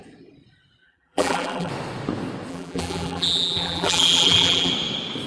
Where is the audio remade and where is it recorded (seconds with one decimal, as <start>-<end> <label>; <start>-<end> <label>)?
0.0-0.8 recorded; 0.8-1.7 remade; 1.7-2.5 recorded; 2.5-4.7 remade; 4.7-5.3 recorded